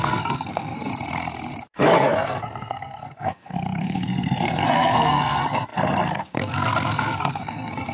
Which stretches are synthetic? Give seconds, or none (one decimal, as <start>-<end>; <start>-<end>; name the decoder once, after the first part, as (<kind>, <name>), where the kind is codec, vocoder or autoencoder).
0.0-0.9 (codec, SNAC); 1.7-7.9